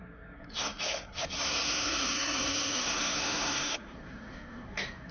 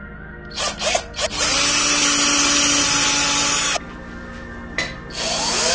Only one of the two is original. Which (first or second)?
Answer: second